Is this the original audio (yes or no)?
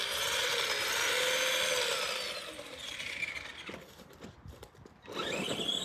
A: yes